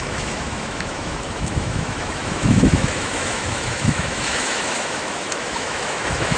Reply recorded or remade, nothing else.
remade